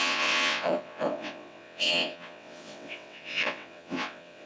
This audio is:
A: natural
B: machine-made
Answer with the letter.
B